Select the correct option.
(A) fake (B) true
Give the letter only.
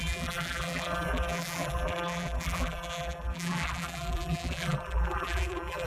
A